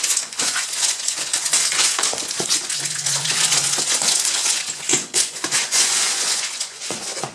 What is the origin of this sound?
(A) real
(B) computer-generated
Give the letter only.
B